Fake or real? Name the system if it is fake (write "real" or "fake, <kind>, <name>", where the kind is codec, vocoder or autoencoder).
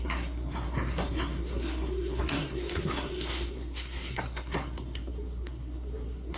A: fake, codec, SNAC